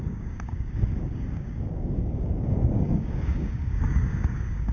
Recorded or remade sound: remade